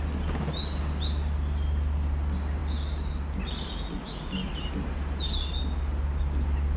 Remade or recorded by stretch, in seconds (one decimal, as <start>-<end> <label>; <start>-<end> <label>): 0.0-6.8 recorded